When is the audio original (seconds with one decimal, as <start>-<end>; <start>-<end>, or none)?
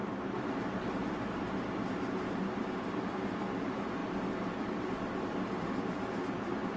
4.0-5.6